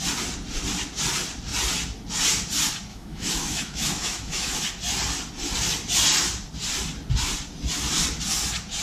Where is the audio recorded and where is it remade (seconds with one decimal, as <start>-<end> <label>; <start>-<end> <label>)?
0.0-2.9 recorded; 2.9-4.6 remade; 4.6-8.8 recorded